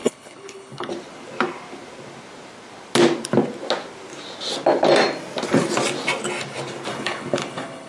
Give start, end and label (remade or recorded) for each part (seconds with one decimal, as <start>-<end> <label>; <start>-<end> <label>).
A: 0.0-0.9 remade; 0.9-6.9 recorded; 6.9-7.9 remade